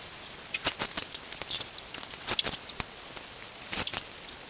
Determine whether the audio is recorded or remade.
recorded